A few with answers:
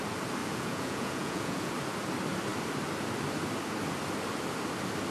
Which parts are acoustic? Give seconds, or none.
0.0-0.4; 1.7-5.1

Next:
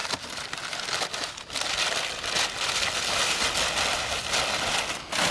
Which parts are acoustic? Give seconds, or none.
0.0-5.3

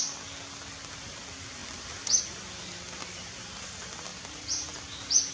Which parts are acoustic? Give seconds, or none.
0.0-1.6; 2.2-5.3

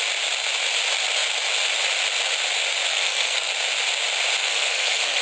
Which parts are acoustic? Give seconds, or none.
0.0-2.9; 3.5-4.4

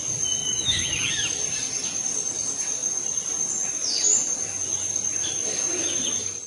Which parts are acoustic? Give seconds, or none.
0.0-0.4; 1.1-6.5

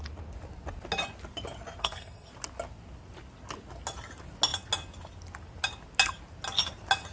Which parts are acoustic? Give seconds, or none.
0.0-1.8; 2.3-7.1

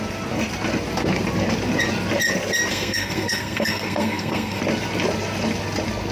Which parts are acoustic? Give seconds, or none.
0.0-2.7; 4.6-6.1

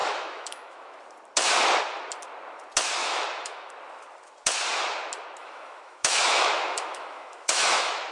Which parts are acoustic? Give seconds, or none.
1.0-3.0; 3.7-5.4